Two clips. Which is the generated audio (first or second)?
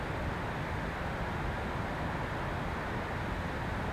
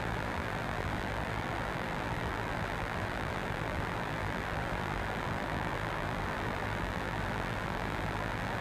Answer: second